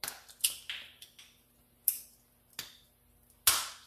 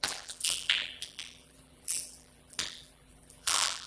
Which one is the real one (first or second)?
first